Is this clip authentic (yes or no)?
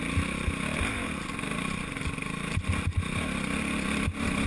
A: yes